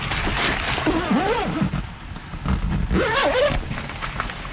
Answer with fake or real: real